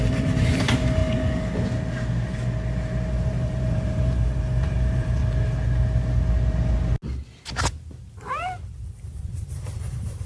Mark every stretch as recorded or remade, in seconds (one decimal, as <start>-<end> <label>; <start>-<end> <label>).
0.0-1.0 remade; 1.0-3.1 recorded; 3.1-5.2 remade; 5.2-8.7 recorded; 8.7-10.3 remade